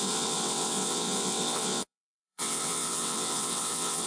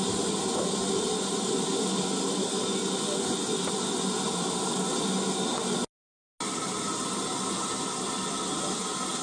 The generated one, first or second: first